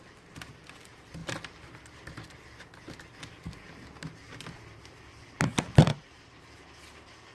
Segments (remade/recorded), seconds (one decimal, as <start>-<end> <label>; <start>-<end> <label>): 0.0-7.3 recorded